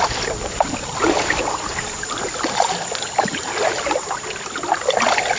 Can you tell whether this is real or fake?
real